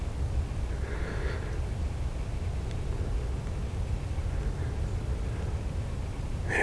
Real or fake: real